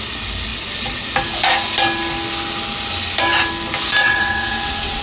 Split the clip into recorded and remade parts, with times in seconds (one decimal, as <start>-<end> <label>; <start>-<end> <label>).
0.0-4.0 recorded; 4.0-5.0 remade